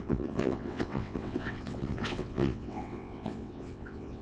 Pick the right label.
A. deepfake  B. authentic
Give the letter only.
A